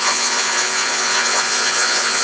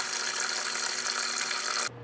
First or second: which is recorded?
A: second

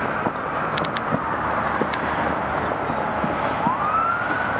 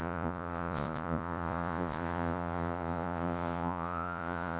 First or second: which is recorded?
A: first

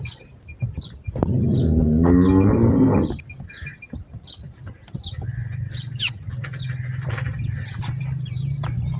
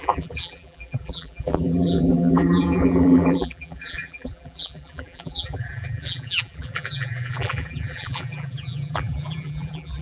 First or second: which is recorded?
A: first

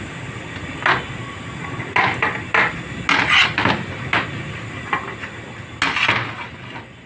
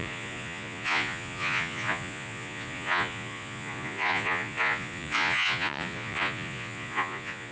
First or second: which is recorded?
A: first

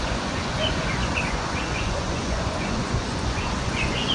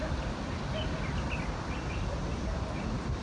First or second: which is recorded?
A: second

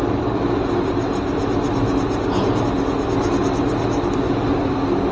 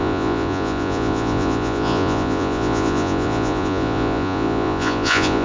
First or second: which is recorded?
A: first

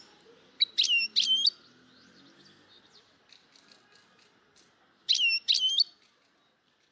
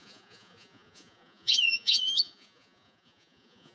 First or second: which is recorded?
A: first